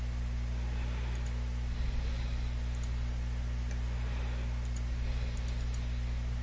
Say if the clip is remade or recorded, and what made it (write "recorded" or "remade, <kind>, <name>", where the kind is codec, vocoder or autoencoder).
recorded